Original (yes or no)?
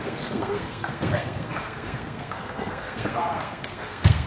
no